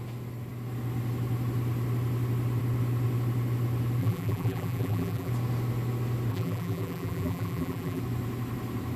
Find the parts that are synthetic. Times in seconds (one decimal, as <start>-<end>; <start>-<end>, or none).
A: 4.0-5.3; 6.3-8.0